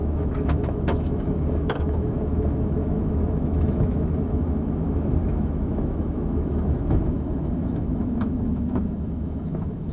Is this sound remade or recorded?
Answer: remade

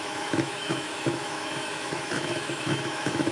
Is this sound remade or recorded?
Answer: remade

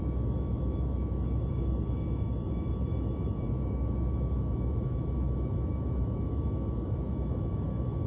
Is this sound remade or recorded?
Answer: remade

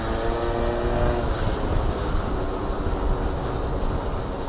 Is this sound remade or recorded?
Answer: recorded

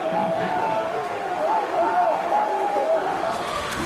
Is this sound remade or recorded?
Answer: remade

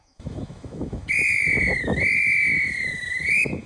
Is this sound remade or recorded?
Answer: remade